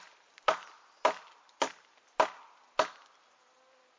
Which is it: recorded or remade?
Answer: recorded